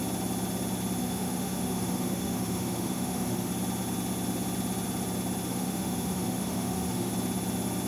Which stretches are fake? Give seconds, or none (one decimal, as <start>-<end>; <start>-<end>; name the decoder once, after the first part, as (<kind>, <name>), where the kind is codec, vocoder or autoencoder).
1.0-3.5 (autoencoder, DAC-VAE); 5.5-7.1